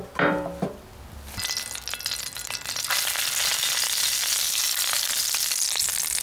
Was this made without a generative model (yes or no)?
yes